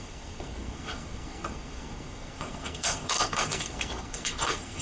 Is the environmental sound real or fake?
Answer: fake